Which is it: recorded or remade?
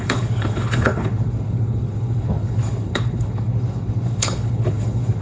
remade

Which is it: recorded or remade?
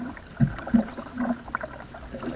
recorded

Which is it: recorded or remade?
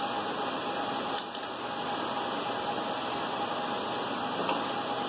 recorded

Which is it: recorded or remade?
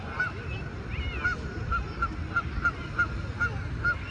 recorded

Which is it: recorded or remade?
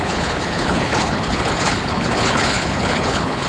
remade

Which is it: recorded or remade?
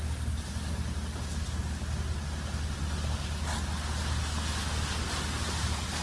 recorded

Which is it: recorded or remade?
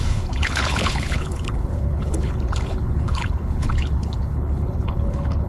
remade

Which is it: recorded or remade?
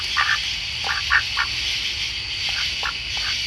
recorded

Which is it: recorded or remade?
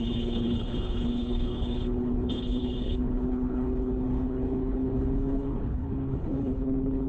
remade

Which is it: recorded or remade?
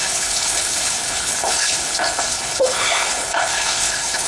remade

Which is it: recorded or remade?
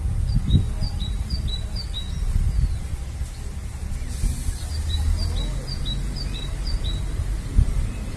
recorded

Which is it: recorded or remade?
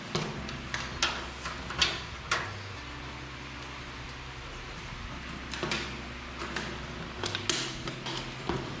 recorded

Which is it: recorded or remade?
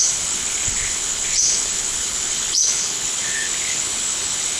remade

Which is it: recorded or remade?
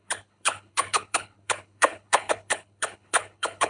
remade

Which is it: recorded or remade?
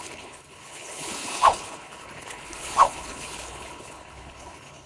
remade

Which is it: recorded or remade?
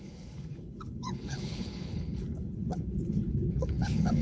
remade